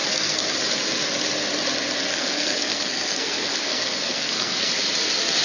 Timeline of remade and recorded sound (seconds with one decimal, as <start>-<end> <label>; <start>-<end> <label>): 0.0-0.6 remade; 0.6-2.1 recorded; 2.1-4.7 remade; 4.7-5.4 recorded

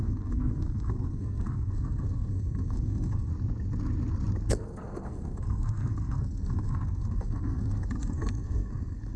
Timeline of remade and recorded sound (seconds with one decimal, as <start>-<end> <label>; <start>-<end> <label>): 0.0-3.3 remade; 3.3-4.5 recorded; 4.5-9.2 remade

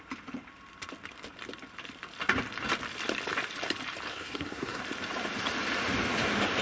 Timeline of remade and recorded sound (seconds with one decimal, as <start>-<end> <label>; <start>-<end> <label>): 0.0-4.1 recorded; 4.1-4.8 remade; 4.8-6.6 recorded

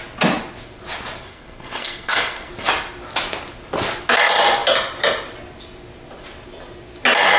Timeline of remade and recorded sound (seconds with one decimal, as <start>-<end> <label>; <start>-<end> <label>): 0.0-1.3 recorded; 1.3-2.5 remade; 2.5-7.4 recorded

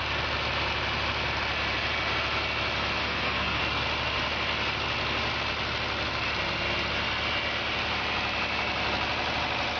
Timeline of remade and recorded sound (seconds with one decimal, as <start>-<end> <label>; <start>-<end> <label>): 0.0-3.0 recorded; 3.0-3.6 remade; 3.6-9.8 recorded

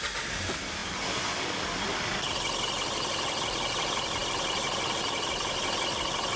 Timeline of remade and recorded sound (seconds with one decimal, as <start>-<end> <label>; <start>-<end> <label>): 0.0-6.4 recorded